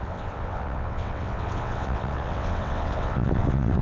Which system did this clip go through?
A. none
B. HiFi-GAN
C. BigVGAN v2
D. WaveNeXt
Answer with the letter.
D